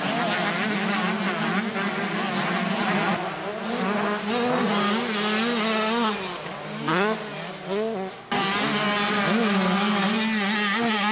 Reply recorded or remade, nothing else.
recorded